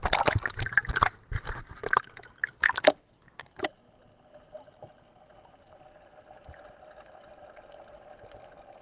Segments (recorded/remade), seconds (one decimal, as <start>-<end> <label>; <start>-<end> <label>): 0.0-2.4 recorded; 2.4-3.4 remade; 3.4-8.8 recorded